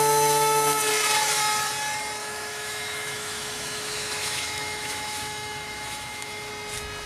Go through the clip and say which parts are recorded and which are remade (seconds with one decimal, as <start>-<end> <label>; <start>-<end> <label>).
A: 0.0-2.2 recorded; 2.2-6.5 remade; 6.5-7.1 recorded